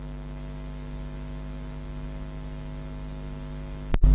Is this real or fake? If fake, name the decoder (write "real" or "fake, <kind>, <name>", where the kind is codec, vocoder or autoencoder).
real